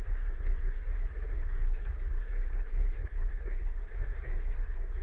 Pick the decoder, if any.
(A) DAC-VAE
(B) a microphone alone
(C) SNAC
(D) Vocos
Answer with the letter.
C